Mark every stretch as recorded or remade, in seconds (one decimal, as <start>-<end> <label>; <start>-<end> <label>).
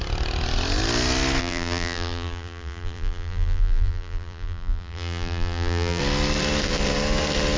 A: 0.0-1.4 recorded; 1.4-6.0 remade; 6.0-7.6 recorded